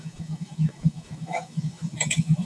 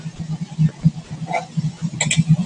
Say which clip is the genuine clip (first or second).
second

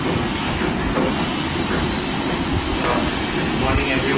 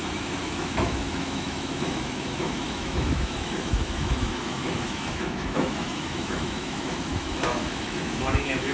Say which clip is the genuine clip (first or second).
first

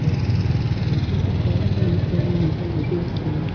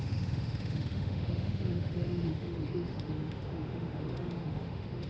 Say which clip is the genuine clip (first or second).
first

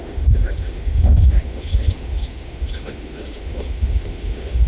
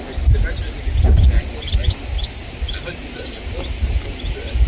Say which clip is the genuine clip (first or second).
second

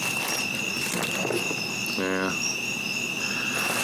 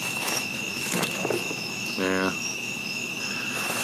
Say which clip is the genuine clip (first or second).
first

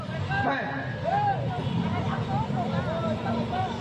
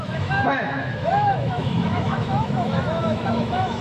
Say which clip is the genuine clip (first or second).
first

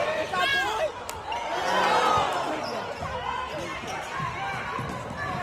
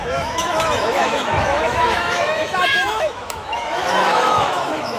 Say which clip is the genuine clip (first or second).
first